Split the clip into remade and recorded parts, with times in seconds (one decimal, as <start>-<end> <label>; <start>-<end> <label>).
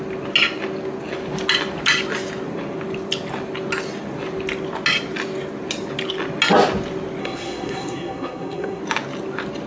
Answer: 0.0-7.2 recorded; 7.2-8.8 remade; 8.8-9.7 recorded